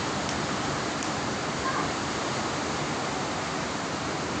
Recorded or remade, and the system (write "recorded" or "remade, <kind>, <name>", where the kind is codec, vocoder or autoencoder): recorded